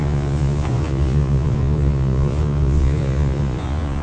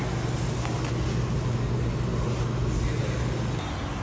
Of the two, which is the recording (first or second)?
second